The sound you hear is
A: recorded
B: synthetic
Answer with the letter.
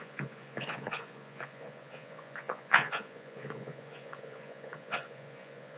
B